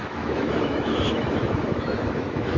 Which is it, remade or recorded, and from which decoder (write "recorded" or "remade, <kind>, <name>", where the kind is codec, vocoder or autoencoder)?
remade, autoencoder, DAC-VAE